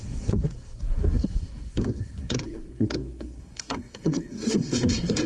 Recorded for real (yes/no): no